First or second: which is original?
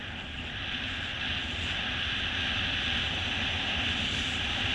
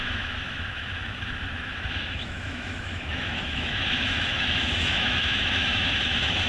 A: first